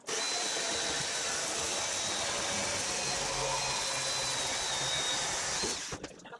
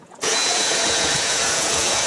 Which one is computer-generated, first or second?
second